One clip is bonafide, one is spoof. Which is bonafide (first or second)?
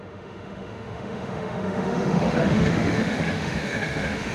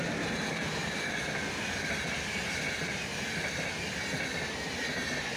second